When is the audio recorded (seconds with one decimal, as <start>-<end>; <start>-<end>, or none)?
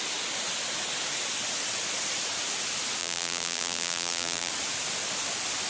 0.0-3.0; 4.5-5.7